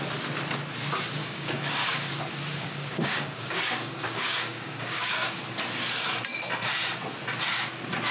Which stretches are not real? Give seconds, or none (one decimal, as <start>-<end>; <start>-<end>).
1.2-2.1; 2.5-5.4